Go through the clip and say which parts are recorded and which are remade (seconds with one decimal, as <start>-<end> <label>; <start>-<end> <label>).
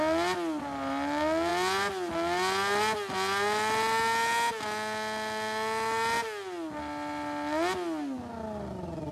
0.0-9.1 recorded